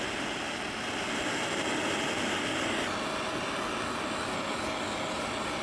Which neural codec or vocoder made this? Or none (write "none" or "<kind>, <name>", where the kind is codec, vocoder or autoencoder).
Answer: none